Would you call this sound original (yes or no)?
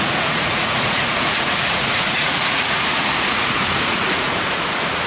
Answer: no